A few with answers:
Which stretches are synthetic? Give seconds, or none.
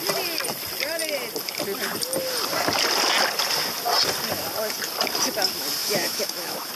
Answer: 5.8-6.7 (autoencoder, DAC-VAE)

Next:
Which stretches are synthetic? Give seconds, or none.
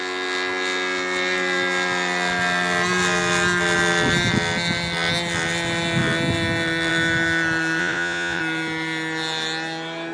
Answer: 7.8-8.4 (vocoder, Vocos)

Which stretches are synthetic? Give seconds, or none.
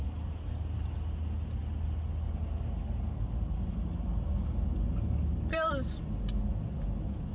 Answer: none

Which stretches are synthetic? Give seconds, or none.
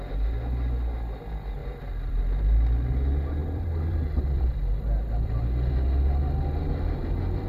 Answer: 1.6-2.2 (vocoder, BigVGAN v2); 3.4-5.7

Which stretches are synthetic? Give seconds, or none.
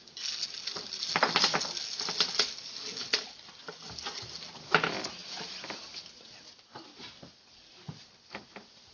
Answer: none